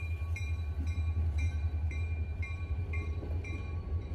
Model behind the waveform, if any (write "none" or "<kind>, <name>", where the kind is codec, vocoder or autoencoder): vocoder, BigVGAN v2